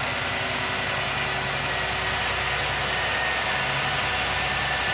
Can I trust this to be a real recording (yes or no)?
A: yes